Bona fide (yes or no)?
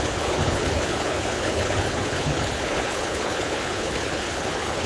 no